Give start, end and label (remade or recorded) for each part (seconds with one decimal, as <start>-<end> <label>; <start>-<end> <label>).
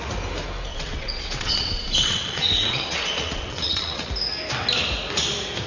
0.0-0.7 recorded; 0.7-4.1 remade; 4.1-5.7 recorded